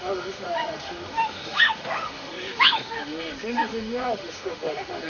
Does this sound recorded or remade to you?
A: remade